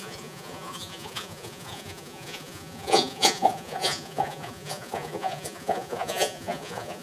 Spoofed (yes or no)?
yes